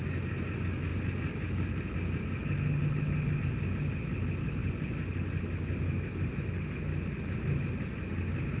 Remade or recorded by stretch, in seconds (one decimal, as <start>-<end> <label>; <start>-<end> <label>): 0.0-8.6 recorded